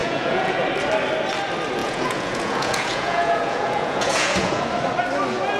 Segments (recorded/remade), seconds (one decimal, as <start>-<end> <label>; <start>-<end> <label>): 0.0-0.6 remade; 0.6-1.8 recorded; 1.8-4.6 remade; 4.6-5.6 recorded